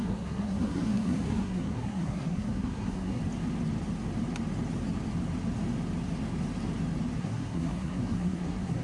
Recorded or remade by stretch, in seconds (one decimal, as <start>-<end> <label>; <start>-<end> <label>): 0.0-3.2 remade; 3.2-7.2 recorded; 7.2-8.8 remade